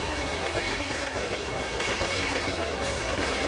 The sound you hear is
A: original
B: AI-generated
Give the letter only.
B